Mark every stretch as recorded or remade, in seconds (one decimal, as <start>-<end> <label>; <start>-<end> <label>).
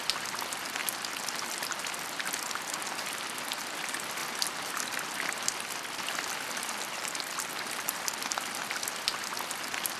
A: 0.0-10.0 recorded